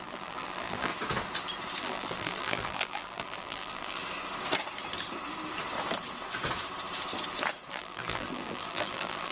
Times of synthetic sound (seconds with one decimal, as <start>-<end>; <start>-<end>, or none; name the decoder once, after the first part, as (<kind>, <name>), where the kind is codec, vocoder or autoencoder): 0.0-0.9 (vocoder, BigVGAN v2); 1.8-4.0; 7.7-9.3